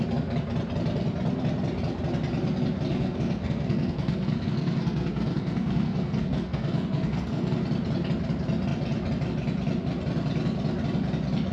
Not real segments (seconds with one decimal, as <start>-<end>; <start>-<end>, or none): 2.9-7.6